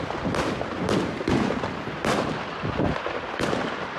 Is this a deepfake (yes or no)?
no